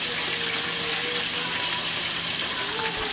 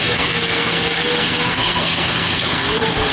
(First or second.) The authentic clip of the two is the first